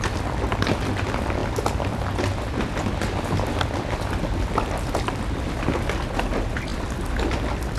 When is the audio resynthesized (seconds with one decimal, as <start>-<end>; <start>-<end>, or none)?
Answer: none